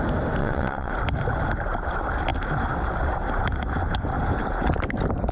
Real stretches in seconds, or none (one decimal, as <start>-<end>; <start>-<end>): 0.0-0.4; 0.9-5.3